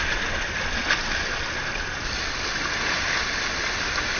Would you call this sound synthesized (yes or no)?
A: no